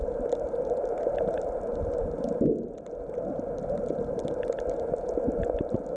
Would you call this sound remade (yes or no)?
no